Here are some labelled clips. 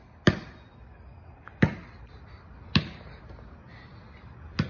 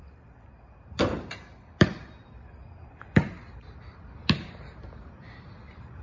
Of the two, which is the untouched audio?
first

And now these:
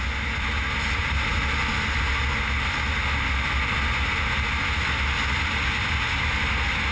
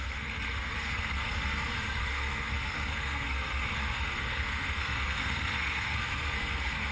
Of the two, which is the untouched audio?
first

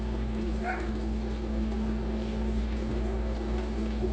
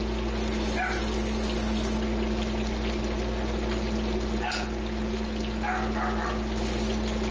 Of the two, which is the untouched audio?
second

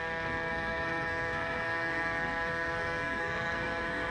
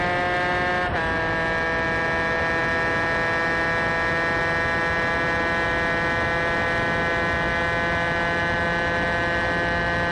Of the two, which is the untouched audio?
second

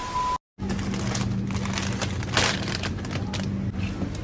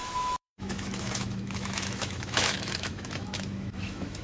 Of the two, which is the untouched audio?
first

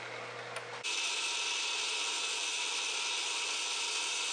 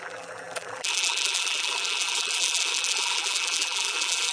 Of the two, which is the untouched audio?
first